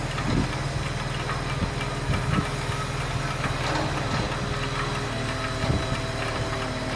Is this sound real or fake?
real